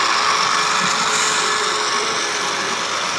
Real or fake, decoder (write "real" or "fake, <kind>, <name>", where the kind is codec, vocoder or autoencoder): real